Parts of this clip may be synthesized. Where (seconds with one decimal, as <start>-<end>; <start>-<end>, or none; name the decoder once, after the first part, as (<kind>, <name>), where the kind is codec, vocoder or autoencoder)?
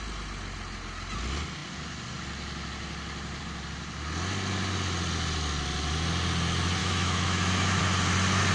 6.8-7.8 (autoencoder, DAC-VAE)